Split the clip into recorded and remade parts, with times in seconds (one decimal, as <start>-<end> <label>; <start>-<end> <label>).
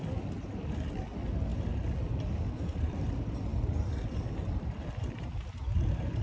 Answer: 0.0-6.2 recorded